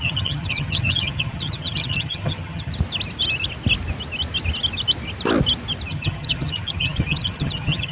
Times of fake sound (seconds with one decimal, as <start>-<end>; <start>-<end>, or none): 0.0-2.7; 5.9-7.9